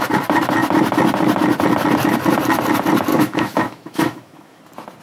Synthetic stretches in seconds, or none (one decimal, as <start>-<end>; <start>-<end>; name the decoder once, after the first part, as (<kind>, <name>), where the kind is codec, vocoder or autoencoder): 3.1-4.6 (autoencoder, DAC-VAE)